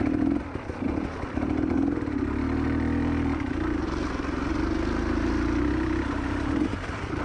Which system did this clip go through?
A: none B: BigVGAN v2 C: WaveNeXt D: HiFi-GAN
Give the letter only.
A